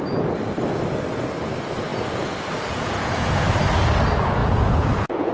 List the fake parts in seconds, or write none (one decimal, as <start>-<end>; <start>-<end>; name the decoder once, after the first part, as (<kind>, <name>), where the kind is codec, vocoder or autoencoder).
1.9-3.5 (vocoder, Vocos); 4.4-5.3